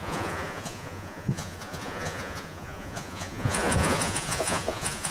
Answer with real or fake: fake